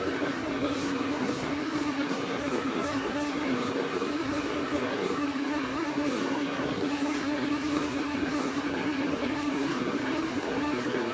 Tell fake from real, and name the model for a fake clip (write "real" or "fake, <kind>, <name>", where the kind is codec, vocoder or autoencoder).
fake, codec, SNAC